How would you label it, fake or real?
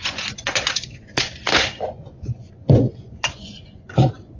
fake